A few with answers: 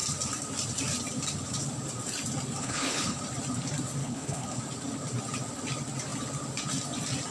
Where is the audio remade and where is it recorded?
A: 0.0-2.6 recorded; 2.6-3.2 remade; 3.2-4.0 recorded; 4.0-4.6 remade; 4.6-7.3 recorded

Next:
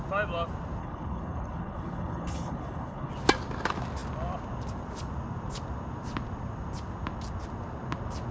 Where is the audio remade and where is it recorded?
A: 0.0-0.8 recorded; 0.8-3.1 remade; 3.1-8.3 recorded